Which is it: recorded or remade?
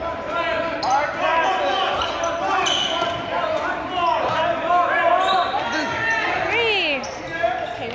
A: recorded